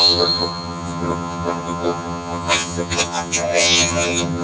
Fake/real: fake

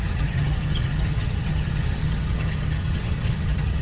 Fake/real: fake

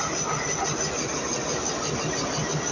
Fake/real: real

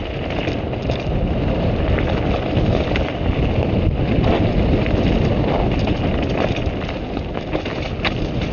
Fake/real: real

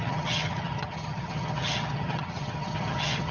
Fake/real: fake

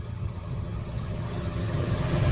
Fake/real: fake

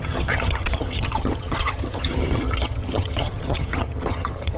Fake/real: fake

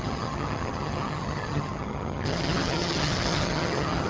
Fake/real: fake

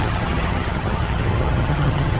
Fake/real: fake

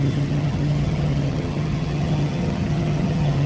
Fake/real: fake